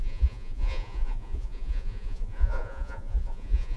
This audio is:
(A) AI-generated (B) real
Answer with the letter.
A